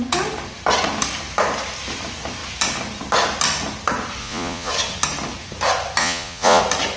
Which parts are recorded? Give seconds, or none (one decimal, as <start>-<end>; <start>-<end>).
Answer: 0.0-4.2; 4.7-6.0; 6.6-7.0